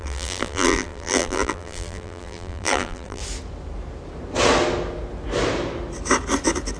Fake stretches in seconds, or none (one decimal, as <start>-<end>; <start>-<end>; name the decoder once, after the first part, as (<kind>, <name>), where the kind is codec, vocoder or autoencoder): 0.0-3.2 (vocoder, BigVGAN v2)